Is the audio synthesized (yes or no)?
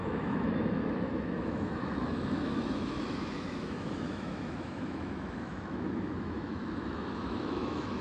yes